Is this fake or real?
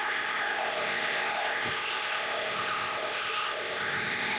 fake